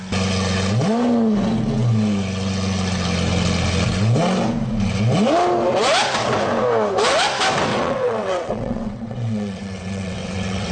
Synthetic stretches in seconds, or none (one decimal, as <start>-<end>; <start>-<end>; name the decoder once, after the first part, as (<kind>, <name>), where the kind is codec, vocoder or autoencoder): 7.7-10.7 (vocoder, WaveNeXt)